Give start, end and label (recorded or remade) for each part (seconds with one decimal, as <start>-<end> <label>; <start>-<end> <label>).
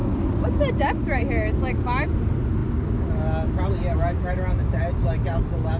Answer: 0.0-5.8 recorded